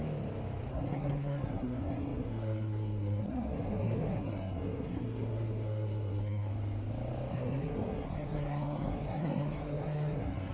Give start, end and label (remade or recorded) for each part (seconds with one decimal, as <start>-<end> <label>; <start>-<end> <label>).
0.0-0.7 recorded; 0.7-6.5 remade; 6.5-7.3 recorded; 7.3-10.5 remade